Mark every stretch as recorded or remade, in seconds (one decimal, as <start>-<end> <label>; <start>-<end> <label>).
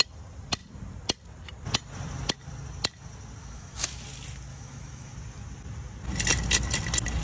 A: 0.0-3.4 recorded; 3.4-4.0 remade; 4.0-4.5 recorded; 4.5-5.1 remade; 5.1-7.2 recorded